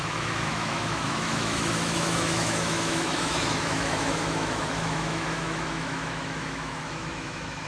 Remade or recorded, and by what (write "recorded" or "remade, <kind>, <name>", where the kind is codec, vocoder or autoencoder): remade, autoencoder, DAC-VAE